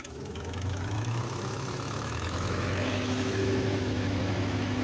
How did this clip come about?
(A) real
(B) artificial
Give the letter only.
B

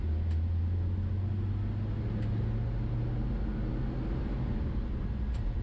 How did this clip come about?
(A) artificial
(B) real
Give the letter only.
B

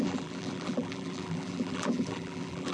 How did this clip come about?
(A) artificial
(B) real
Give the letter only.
A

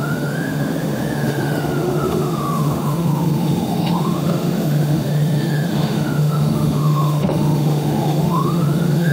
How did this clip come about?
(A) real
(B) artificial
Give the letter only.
B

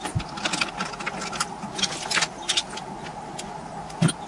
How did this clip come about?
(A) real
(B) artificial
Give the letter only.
A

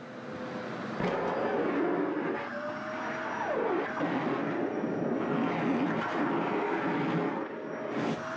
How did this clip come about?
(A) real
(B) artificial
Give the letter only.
A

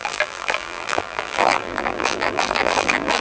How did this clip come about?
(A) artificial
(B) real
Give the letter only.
A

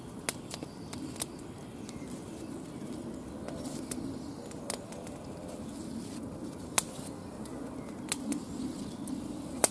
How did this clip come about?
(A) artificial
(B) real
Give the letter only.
B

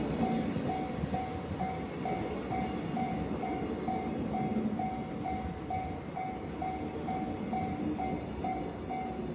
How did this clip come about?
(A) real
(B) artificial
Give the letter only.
A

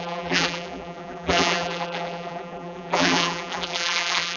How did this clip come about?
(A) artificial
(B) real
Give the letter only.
A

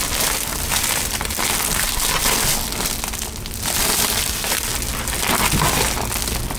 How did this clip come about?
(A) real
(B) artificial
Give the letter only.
A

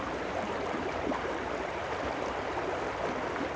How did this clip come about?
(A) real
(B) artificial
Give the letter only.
A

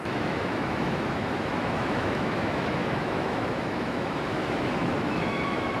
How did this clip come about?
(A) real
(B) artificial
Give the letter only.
B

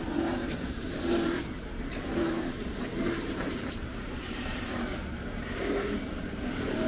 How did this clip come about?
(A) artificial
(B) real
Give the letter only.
A